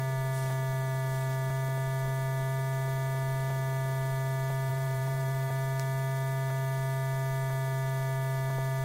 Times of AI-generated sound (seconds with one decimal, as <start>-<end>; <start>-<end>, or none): 4.7-5.5